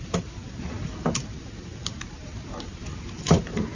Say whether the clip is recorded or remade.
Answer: remade